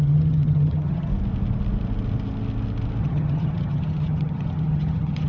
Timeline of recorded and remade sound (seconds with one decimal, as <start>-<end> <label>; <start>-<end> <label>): 0.0-1.1 remade; 1.1-3.0 recorded; 3.0-5.3 remade

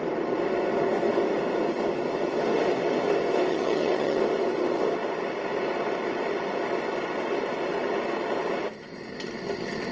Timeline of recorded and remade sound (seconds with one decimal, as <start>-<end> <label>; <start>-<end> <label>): 0.0-3.5 recorded; 3.5-4.2 remade; 4.2-9.9 recorded

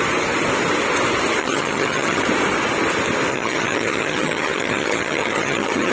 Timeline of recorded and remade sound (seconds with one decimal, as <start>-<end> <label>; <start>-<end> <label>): 0.0-1.4 recorded; 1.4-2.2 remade; 2.2-3.3 recorded; 3.3-5.9 remade

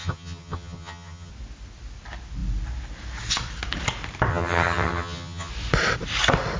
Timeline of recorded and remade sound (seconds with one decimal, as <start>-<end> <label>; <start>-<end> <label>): 0.0-1.3 remade; 1.3-4.3 recorded; 4.3-5.5 remade; 5.5-6.6 recorded

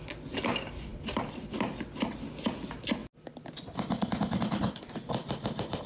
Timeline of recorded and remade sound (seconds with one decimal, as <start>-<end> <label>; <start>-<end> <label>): 0.0-5.9 recorded